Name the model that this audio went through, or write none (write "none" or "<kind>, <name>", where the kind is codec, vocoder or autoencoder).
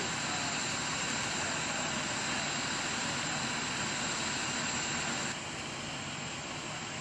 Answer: none